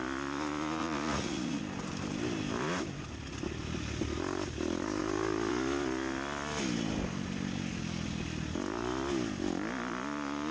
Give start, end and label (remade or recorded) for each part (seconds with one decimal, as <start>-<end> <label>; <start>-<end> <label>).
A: 0.0-0.8 recorded; 0.8-1.6 remade; 1.6-10.5 recorded

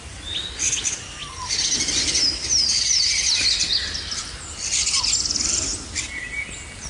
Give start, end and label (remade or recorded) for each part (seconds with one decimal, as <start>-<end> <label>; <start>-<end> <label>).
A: 0.0-6.9 recorded